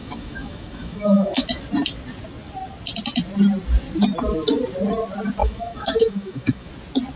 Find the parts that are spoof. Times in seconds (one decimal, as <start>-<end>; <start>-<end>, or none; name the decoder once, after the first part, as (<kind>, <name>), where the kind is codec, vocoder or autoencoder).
0.0-1.6 (autoencoder, DAC-VAE); 5.4-6.7